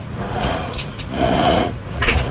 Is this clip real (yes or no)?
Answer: no